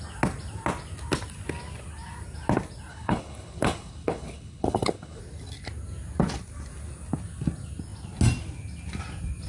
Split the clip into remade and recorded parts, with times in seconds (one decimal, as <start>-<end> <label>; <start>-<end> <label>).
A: 0.0-2.9 recorded; 2.9-5.2 remade; 5.2-9.5 recorded